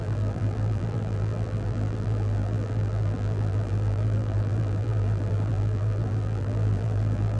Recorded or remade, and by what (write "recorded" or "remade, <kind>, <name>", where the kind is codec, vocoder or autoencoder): remade, vocoder, BigVGAN v2